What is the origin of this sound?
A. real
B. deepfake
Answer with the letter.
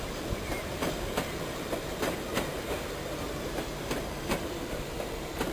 B